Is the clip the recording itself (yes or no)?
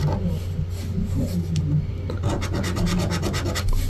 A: yes